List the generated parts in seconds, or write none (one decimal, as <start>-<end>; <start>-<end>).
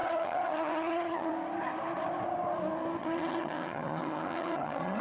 0.0-1.3; 3.0-5.0